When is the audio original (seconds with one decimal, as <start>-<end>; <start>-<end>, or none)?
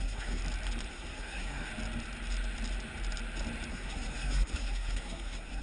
0.4-0.9; 1.7-3.7